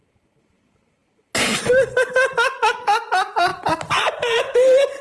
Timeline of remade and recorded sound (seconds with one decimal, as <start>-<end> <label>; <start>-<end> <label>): 0.0-1.0 remade; 1.0-3.1 recorded; 3.1-3.5 remade; 3.5-4.0 recorded; 4.0-5.0 remade